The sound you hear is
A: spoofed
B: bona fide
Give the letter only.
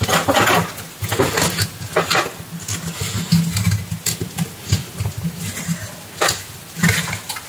B